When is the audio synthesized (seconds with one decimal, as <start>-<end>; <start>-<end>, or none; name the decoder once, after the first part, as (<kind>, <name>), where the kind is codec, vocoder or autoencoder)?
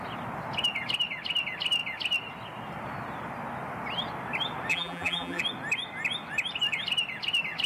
4.7-5.4 (vocoder, BigVGAN v2)